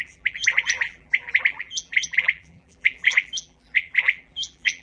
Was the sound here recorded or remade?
remade